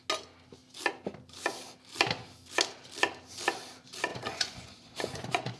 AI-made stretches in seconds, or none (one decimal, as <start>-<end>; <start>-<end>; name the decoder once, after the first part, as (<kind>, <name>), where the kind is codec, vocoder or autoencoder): 4.1-5.6 (vocoder, Vocos)